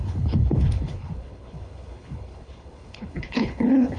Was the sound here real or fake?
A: fake